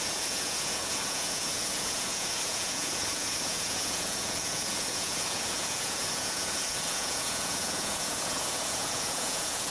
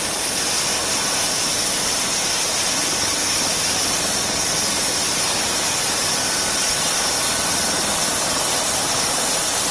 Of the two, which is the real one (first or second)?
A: second